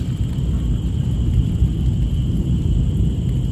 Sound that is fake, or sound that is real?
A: real